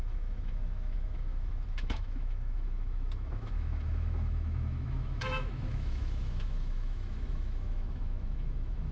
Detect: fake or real fake